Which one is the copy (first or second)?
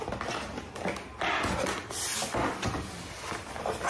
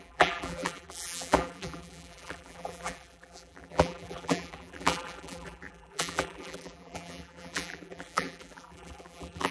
second